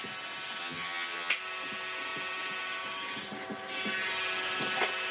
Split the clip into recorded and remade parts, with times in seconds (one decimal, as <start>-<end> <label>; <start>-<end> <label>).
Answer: 0.0-0.6 recorded; 0.6-1.3 remade; 1.3-5.1 recorded